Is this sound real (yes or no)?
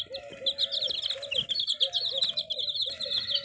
yes